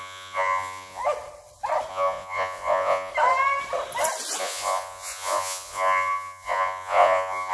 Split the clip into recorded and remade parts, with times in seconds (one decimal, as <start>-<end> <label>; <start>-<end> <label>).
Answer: 0.0-1.0 remade; 1.0-1.9 recorded; 1.9-3.1 remade; 3.1-4.4 recorded; 4.4-7.5 remade